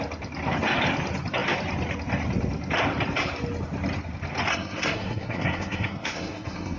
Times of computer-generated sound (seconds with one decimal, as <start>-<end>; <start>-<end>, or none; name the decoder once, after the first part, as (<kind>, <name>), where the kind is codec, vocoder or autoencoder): 4.5-6.8 (codec, SNAC)